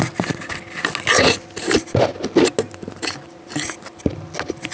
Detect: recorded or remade recorded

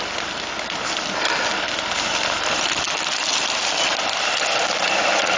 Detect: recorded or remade recorded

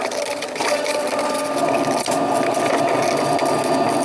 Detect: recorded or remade recorded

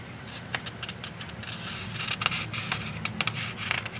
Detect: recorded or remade recorded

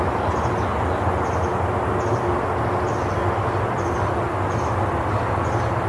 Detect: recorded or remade recorded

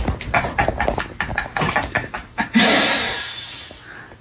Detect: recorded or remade recorded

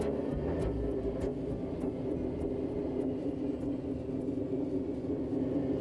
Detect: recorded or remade recorded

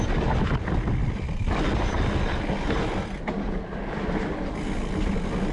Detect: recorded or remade recorded